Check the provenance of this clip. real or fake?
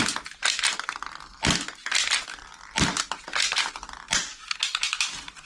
real